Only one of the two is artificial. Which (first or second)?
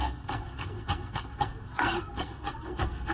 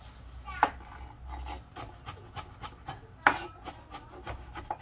first